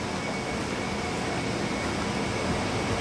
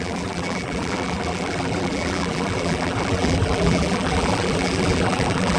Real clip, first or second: first